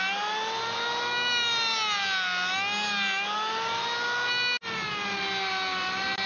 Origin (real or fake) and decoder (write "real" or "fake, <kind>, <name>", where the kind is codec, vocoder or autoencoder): real